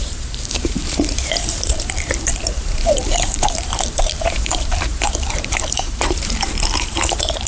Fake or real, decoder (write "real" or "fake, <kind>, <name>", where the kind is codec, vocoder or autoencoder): fake, vocoder, BigVGAN v2